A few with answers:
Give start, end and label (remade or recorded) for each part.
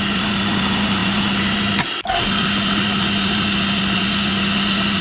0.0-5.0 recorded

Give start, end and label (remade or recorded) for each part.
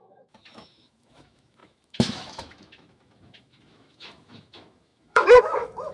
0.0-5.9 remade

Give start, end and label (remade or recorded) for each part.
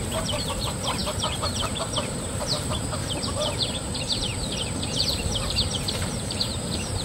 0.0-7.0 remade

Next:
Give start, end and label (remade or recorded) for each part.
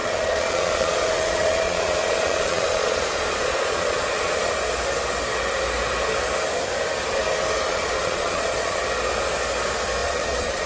0.0-4.5 remade; 4.5-7.7 recorded; 7.7-8.8 remade; 8.8-10.0 recorded; 10.0-10.7 remade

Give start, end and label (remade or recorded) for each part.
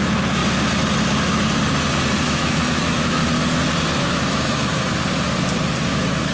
0.0-0.4 remade; 0.4-2.2 recorded; 2.2-3.2 remade; 3.2-4.0 recorded; 4.0-4.7 remade; 4.7-5.8 recorded; 5.8-6.3 remade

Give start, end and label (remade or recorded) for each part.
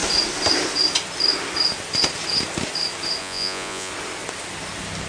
0.0-3.2 recorded; 3.2-3.9 remade; 3.9-5.1 recorded